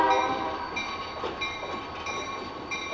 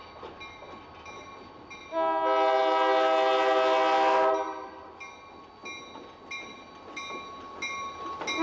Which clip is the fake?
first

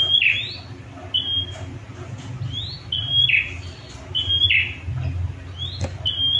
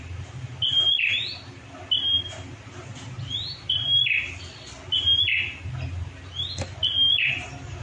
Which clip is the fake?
second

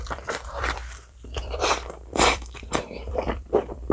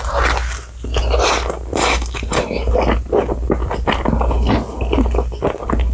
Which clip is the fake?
first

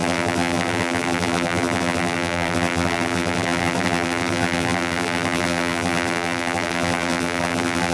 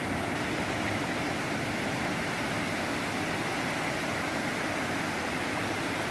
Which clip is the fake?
first